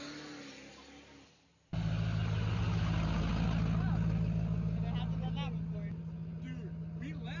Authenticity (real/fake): real